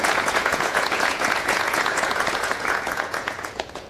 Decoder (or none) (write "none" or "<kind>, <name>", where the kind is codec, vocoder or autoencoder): vocoder, Vocos